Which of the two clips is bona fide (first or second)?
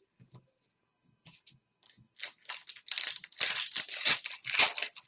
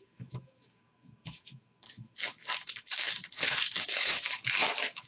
first